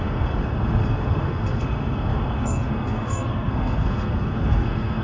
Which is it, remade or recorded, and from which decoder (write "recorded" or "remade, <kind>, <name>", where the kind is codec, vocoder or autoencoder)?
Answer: remade, codec, SNAC